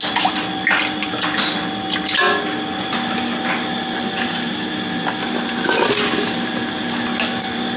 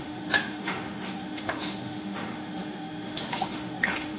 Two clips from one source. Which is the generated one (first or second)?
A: second